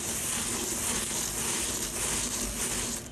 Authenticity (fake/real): real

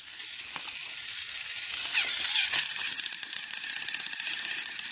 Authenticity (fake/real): real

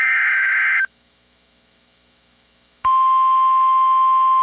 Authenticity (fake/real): fake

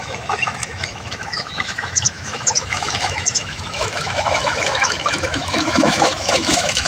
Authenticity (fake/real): fake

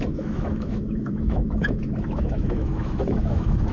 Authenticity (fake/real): fake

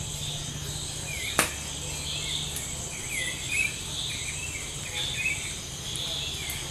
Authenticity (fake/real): real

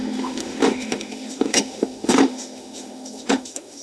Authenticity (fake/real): fake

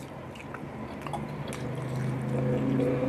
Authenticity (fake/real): real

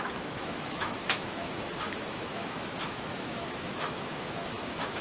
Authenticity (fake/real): fake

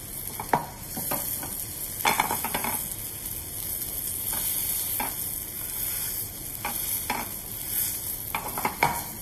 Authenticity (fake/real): real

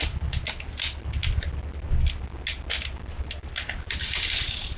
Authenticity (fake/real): real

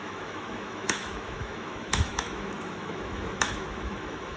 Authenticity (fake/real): fake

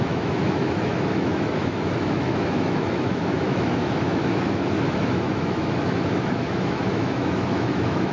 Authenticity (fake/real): fake